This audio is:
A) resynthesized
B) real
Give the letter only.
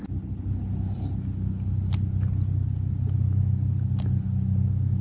B